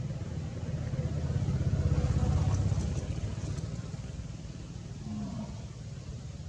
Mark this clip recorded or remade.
recorded